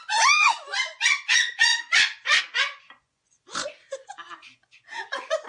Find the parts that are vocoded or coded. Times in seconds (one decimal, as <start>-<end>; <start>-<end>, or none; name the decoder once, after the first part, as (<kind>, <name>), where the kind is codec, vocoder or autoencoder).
0.0-5.5 (vocoder, Vocos)